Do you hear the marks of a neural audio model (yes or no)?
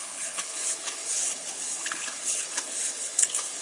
yes